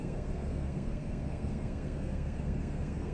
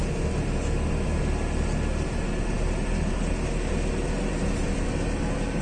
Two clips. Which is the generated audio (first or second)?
first